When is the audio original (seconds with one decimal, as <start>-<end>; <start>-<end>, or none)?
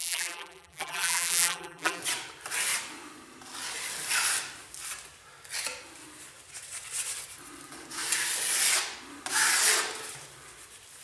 2.0-11.0